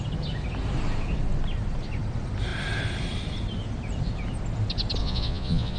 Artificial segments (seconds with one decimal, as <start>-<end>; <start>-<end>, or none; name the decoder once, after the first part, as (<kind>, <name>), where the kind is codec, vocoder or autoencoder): 5.0-5.8 (vocoder, Vocos)